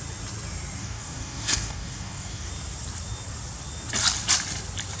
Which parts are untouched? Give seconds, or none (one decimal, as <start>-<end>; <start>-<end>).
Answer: 0.0-0.8; 2.5-5.0